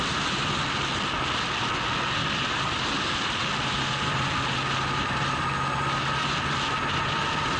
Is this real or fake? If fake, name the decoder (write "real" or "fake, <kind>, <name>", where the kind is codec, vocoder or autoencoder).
real